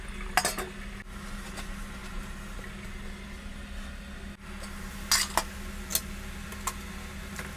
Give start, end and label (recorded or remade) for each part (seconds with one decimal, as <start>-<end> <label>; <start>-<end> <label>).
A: 0.0-7.6 recorded